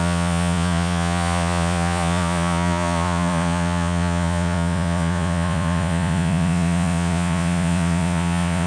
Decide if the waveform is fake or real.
fake